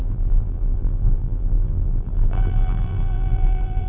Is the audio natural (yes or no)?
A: no